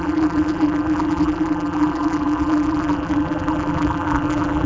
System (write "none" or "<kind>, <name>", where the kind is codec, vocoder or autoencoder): vocoder, BigVGAN v2